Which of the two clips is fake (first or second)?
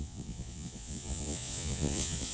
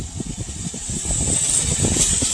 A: first